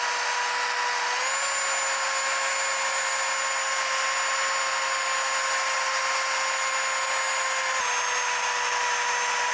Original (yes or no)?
yes